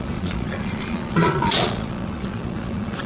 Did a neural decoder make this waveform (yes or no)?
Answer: yes